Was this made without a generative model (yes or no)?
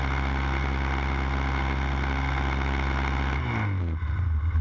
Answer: yes